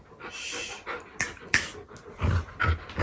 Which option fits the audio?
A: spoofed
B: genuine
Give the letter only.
B